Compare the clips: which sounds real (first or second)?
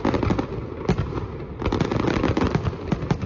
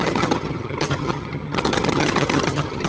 first